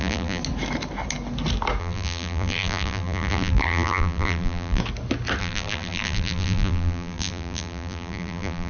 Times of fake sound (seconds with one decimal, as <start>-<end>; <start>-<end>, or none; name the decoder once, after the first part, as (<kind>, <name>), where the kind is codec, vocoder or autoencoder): 0.0-0.4 (vocoder, BigVGAN v2); 1.8-4.8; 5.4-8.7